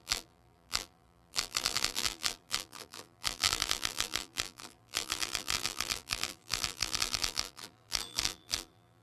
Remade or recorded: remade